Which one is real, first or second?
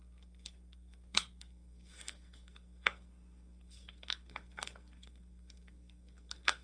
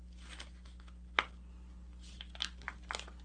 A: second